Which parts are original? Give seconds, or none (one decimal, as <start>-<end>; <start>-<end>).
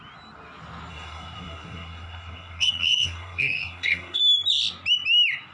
0.0-0.9; 4.2-5.5